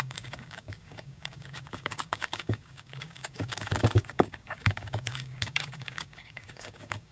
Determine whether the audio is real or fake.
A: fake